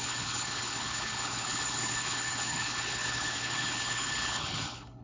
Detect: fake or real fake